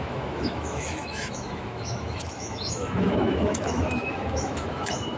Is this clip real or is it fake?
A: fake